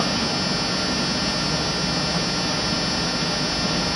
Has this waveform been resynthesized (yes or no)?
no